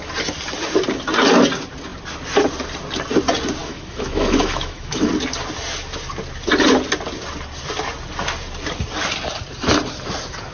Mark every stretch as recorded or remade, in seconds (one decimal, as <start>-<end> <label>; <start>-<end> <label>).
0.0-3.6 recorded; 3.6-5.1 remade; 5.1-10.5 recorded